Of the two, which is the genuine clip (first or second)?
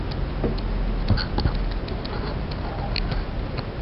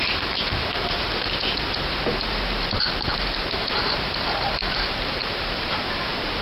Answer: first